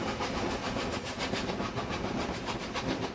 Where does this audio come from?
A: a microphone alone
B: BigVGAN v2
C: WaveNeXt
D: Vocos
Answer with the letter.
A